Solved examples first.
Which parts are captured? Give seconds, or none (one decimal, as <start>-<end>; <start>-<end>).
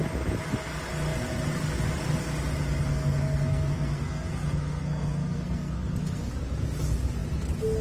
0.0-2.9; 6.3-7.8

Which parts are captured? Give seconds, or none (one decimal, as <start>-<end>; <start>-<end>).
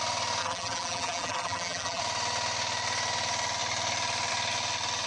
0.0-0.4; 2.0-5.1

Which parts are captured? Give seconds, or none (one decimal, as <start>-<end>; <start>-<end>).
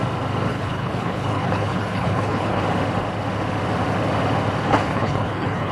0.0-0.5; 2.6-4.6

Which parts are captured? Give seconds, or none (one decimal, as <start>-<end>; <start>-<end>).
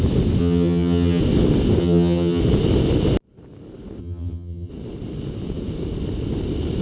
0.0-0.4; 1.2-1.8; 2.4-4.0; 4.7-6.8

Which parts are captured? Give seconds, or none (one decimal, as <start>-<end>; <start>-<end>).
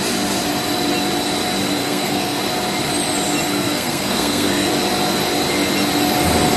0.0-1.8; 2.4-3.5; 4.7-6.6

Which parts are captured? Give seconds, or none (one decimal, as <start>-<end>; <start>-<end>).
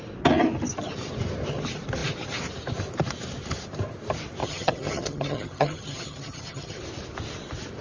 0.0-4.4; 6.8-7.8